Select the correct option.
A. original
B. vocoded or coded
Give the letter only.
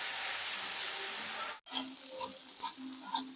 A